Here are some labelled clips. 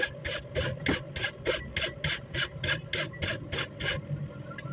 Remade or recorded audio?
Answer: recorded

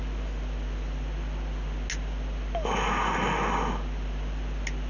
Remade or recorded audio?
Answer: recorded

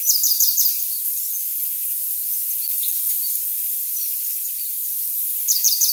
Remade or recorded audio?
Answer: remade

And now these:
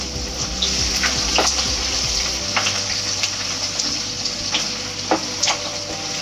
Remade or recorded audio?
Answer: recorded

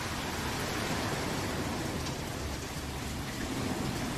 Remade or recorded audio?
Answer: recorded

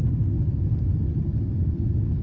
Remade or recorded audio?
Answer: recorded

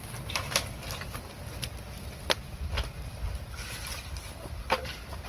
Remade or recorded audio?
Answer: recorded